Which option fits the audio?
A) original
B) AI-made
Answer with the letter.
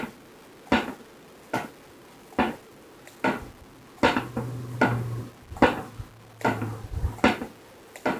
A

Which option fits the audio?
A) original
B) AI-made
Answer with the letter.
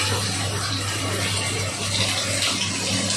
A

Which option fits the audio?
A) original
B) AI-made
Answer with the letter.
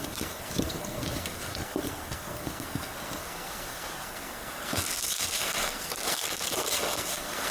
B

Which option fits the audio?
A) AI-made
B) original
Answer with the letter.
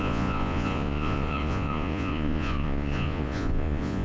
A